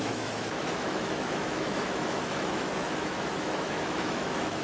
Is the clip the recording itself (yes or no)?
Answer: no